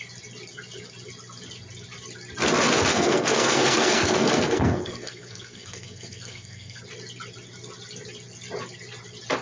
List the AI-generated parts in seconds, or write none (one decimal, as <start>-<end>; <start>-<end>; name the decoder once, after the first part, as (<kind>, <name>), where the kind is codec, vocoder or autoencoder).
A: 2.9-6.8 (codec, SNAC)